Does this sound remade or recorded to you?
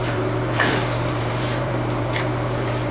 remade